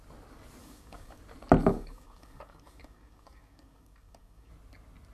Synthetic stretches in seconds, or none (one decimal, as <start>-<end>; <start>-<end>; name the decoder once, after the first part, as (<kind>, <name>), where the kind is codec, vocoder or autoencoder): 0.6-1.2 (codec, DAC); 1.7-4.5